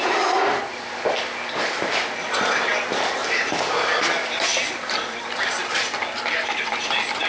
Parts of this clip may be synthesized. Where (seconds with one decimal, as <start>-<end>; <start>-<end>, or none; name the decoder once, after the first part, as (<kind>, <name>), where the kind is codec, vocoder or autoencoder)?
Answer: none